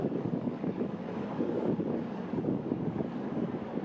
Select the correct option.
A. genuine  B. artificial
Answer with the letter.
B